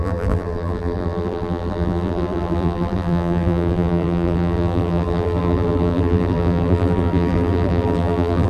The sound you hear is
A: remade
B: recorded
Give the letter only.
A